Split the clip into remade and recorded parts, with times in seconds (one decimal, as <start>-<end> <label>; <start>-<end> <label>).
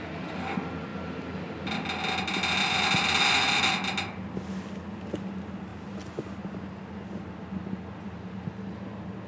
0.0-9.3 recorded